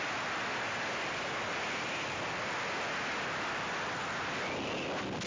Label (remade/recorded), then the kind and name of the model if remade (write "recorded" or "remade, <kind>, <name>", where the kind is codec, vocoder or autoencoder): recorded